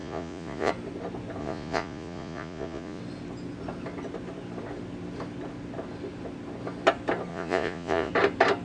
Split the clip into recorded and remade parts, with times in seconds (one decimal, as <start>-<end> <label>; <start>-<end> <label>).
0.0-0.7 remade; 0.7-1.4 recorded; 1.4-3.0 remade; 3.0-7.3 recorded; 7.3-8.1 remade; 8.1-8.6 recorded